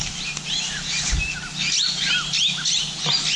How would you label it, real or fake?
real